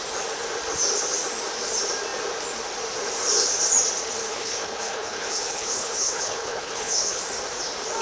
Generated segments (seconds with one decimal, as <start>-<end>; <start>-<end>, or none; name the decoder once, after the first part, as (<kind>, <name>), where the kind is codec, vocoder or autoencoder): 4.2-7.2 (codec, HILCodec)